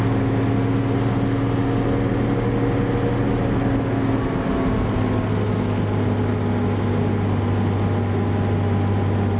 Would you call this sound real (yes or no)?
yes